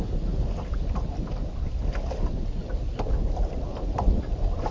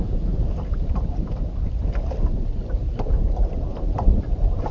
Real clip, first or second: first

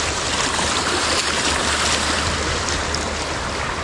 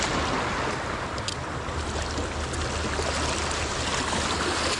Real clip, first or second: second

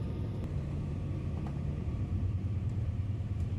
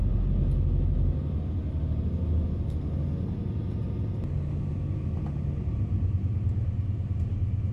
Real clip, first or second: second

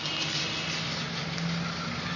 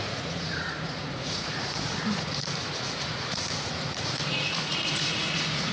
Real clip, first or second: first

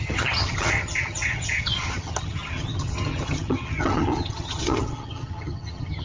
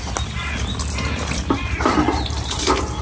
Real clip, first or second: second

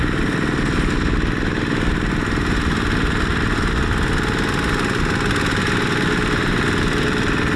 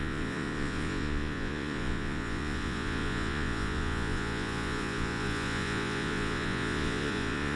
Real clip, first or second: first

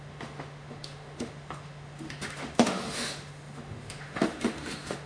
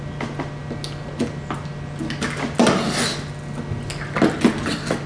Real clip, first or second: second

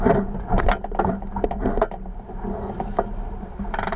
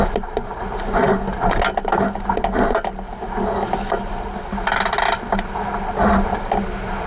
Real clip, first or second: second